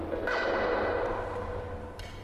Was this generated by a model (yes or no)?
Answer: no